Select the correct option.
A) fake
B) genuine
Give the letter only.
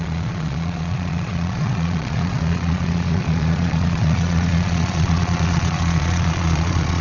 A